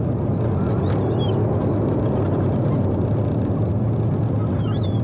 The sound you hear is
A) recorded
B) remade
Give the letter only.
A